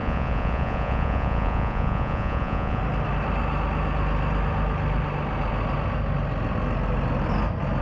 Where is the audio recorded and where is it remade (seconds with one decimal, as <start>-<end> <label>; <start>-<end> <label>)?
0.0-2.8 remade; 2.8-7.8 recorded